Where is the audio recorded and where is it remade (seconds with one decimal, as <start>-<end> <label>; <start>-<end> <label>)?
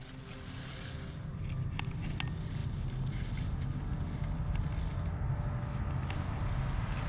0.0-1.3 recorded; 1.3-2.1 remade; 2.1-7.1 recorded